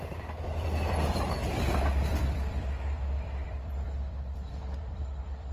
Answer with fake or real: fake